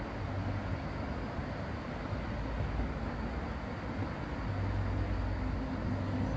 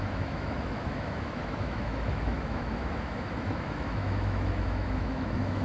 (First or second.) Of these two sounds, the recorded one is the first